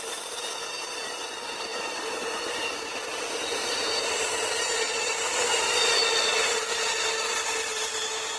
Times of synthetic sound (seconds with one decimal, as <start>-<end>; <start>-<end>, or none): none